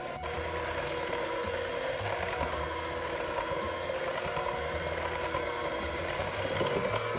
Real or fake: real